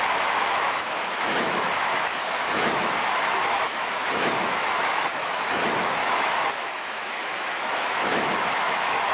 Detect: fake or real fake